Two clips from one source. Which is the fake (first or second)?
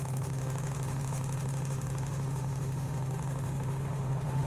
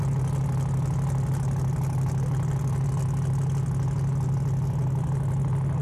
first